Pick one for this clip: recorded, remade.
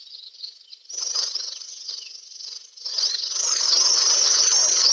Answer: recorded